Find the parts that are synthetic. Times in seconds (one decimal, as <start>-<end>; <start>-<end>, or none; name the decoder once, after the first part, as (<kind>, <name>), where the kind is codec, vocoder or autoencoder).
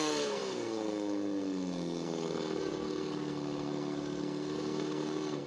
0.0-5.5 (codec, SNAC)